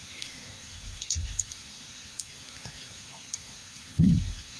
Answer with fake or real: fake